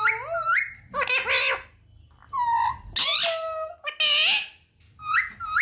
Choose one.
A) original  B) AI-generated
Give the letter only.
A